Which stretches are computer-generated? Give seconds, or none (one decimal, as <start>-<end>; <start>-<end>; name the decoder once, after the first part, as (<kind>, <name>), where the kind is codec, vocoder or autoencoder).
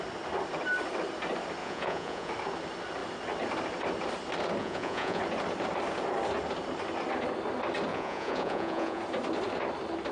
1.6-2.3 (vocoder, Vocos); 4.6-5.2; 7.9-9.0